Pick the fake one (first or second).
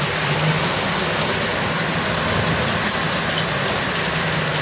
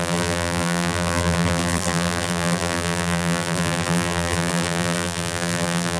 second